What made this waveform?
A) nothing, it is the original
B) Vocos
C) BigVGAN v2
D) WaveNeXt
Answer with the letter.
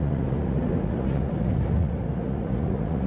B